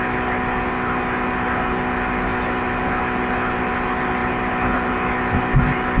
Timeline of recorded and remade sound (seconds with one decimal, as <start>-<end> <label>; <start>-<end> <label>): 0.0-6.0 recorded